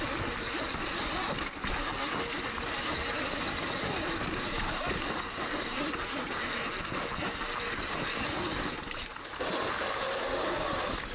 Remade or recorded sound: recorded